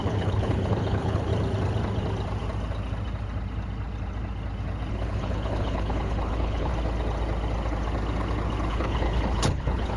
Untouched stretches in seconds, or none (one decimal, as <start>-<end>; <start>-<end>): 1.3-4.9; 6.7-8.7